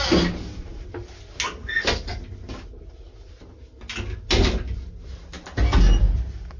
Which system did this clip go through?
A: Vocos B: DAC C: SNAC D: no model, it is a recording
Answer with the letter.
D